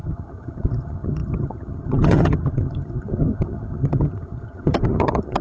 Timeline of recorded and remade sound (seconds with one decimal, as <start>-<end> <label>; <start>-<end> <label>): 0.0-5.4 remade

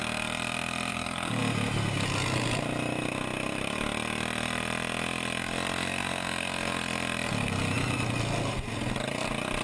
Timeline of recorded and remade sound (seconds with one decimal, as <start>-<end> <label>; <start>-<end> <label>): 0.0-0.9 recorded; 0.9-1.4 remade; 1.4-9.6 recorded

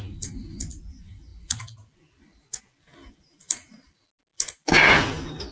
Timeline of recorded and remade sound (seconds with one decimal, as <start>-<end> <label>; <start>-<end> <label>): 0.0-5.5 recorded

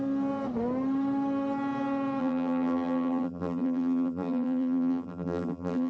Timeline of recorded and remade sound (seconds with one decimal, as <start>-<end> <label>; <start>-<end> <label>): 0.0-2.2 recorded; 2.2-5.9 remade

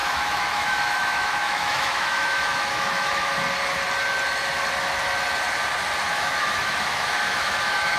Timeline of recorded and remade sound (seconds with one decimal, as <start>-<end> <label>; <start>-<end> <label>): 0.0-3.3 remade; 3.3-6.1 recorded; 6.1-8.0 remade

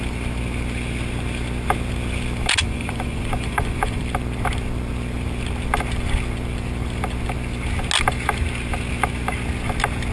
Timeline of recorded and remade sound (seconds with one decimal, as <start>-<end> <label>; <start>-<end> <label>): 0.0-2.6 recorded; 2.6-4.0 remade; 4.0-10.1 recorded

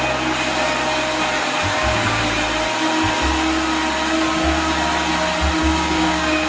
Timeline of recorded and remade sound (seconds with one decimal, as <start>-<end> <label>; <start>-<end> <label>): 0.0-1.7 recorded; 1.7-2.2 remade; 2.2-5.6 recorded; 5.6-6.5 remade

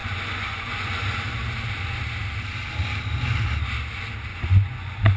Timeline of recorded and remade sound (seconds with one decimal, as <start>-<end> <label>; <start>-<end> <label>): 0.0-1.0 remade; 1.0-4.3 recorded; 4.3-5.2 remade